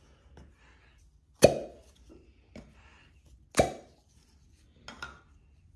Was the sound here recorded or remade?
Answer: recorded